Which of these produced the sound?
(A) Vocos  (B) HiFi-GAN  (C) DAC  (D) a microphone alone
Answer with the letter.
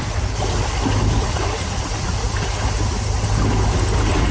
D